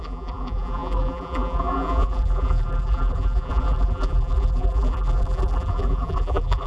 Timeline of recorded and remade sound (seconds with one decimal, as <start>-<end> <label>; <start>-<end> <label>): 0.0-6.7 remade